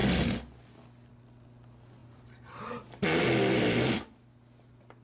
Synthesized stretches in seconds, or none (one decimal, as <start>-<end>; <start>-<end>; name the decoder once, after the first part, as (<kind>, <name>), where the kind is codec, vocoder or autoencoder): 2.0-3.0 (vocoder, BigVGAN v2)